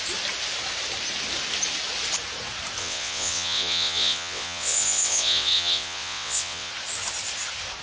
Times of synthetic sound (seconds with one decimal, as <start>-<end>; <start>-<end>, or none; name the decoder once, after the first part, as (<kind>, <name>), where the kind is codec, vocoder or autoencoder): 2.8-6.7 (vocoder, WaveNeXt)